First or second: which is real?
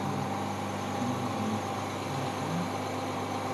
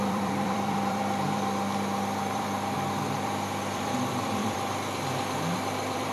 first